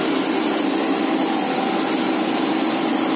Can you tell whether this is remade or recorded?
recorded